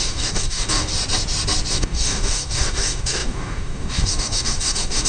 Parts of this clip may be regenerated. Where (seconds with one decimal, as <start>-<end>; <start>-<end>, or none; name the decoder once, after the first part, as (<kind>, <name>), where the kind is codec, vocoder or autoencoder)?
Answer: 0.0-0.9 (codec, DAC); 1.7-5.1